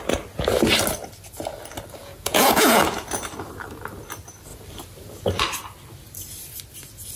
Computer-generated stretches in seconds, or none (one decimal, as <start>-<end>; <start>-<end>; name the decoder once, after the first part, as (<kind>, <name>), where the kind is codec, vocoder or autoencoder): 2.0-2.8 (vocoder, Vocos)